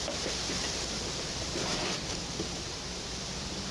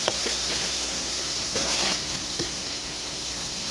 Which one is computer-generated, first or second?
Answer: second